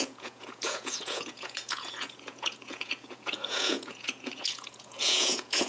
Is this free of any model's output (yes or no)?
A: no